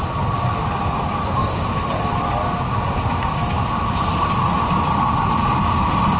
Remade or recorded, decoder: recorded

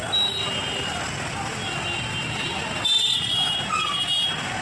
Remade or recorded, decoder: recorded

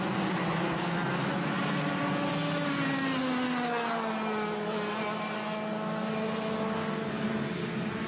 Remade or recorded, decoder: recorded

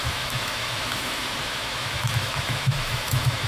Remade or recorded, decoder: remade, autoencoder, DAC-VAE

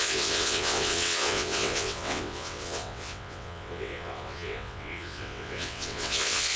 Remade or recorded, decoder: remade, vocoder, WaveNeXt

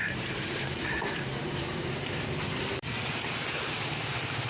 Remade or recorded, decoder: remade, vocoder, BigVGAN v2